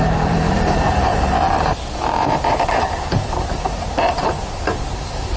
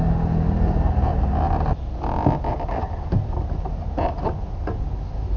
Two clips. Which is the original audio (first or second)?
second